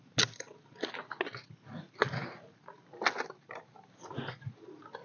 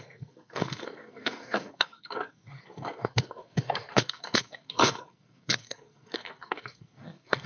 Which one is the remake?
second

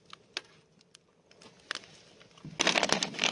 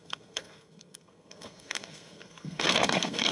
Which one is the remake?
second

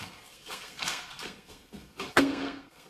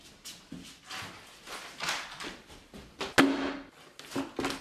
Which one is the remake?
first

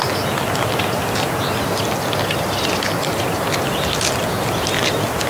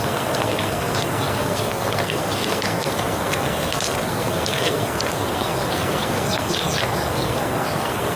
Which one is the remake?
second